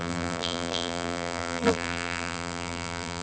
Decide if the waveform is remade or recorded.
remade